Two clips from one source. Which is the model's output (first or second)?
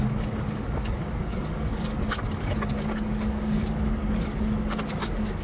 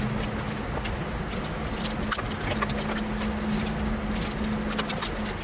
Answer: first